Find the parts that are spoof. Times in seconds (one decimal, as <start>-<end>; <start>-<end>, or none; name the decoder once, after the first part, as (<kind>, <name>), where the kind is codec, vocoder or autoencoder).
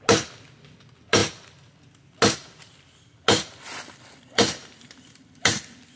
none